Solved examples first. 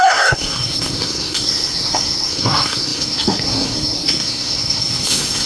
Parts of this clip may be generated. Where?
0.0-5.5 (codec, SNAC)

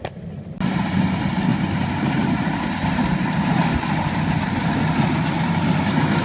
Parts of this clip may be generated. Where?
none

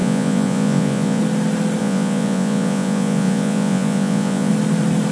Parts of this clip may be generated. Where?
0.0-1.2 (vocoder, Vocos); 1.8-4.5

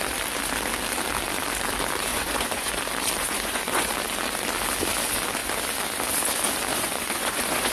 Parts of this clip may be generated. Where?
2.1-2.8 (vocoder, Vocos); 3.2-3.9; 6.7-7.7

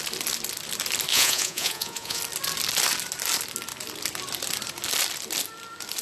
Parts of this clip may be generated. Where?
1.1-2.2 (vocoder, Vocos)

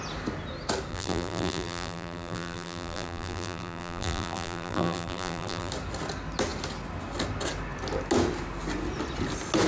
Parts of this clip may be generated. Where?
0.9-5.7 (vocoder, BigVGAN v2)